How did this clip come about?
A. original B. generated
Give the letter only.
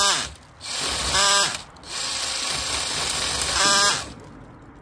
A